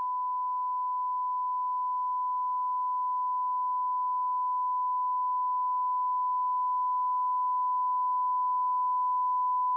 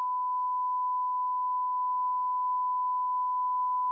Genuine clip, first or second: first